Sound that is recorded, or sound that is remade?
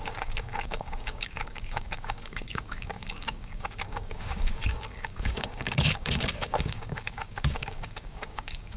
remade